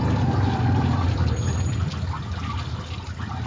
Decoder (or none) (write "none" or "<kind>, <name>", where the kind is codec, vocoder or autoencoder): none